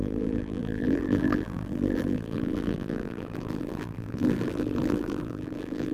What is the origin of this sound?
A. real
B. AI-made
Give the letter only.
B